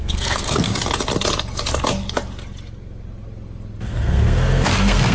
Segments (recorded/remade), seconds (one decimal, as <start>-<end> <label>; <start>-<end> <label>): 0.0-0.7 remade; 0.7-3.8 recorded; 3.8-5.1 remade